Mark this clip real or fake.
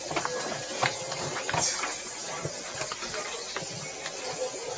real